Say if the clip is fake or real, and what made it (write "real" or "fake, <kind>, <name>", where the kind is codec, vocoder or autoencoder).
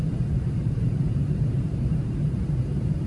fake, vocoder, BigVGAN v2